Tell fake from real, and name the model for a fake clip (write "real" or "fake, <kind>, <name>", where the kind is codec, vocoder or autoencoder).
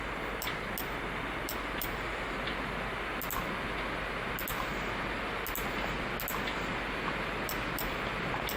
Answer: real